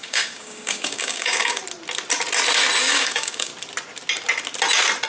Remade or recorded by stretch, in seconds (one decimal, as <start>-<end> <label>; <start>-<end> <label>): 0.0-1.6 remade; 1.6-2.8 recorded; 2.8-3.5 remade; 3.5-5.1 recorded